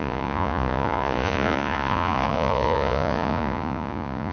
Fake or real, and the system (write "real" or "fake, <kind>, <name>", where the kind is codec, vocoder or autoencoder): fake, vocoder, Vocos